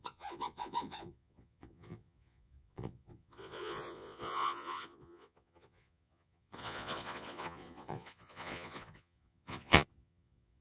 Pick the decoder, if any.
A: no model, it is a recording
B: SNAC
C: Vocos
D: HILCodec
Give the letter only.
C